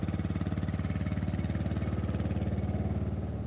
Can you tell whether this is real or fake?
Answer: real